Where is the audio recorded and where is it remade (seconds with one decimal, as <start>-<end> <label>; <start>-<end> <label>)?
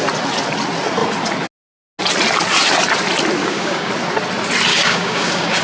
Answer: 0.0-3.4 recorded; 3.4-3.9 remade; 3.9-4.7 recorded; 4.7-5.6 remade